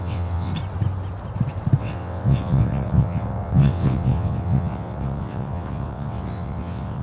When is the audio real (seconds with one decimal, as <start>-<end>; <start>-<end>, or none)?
0.5-1.8